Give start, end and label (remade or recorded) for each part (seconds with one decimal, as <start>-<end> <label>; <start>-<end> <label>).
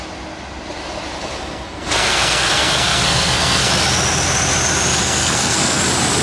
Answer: 0.0-1.2 recorded; 1.2-3.7 remade; 3.7-5.0 recorded; 5.0-5.8 remade; 5.8-6.2 recorded